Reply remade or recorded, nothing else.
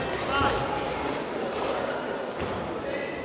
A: recorded